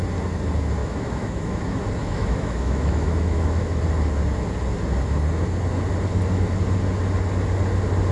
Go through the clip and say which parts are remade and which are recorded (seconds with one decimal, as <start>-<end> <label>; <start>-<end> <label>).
0.0-0.8 recorded; 0.8-1.6 remade; 1.6-2.0 recorded; 2.0-3.8 remade; 3.8-8.1 recorded